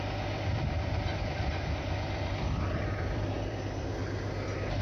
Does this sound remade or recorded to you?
remade